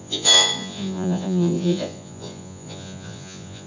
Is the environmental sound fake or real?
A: fake